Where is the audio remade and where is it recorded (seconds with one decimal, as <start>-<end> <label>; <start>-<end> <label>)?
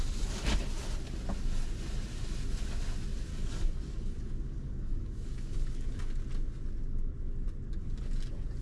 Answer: 0.0-3.3 recorded; 3.3-6.1 remade; 6.1-8.6 recorded